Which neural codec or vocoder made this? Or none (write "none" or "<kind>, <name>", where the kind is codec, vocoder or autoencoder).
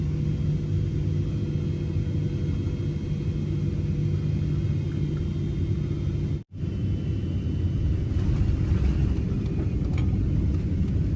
none